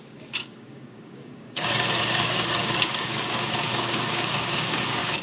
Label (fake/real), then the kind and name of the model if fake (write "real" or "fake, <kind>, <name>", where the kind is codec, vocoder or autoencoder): fake, codec, DAC